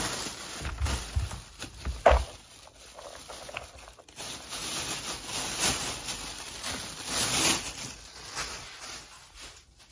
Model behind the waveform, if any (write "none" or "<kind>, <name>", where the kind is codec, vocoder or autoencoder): none